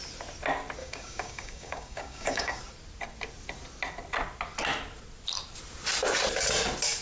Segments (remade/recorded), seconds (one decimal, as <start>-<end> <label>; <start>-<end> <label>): 0.0-0.8 recorded; 0.8-2.6 remade; 2.6-7.0 recorded